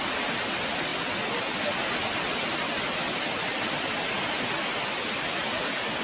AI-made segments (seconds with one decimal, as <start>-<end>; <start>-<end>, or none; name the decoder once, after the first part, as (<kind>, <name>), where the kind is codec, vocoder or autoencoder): none